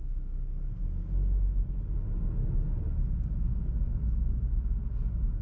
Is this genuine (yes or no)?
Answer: yes